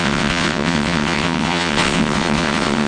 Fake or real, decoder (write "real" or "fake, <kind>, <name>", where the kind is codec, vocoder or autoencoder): fake, vocoder, WaveNeXt